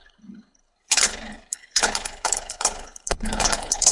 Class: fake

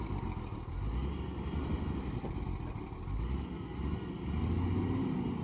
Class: real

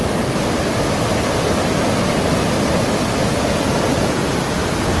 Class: real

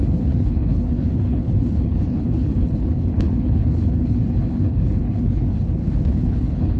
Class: fake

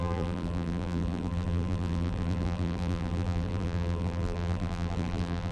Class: fake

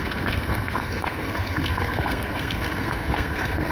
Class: fake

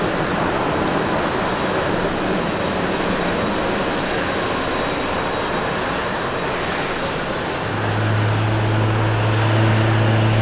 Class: real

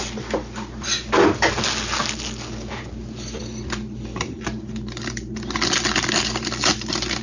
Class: real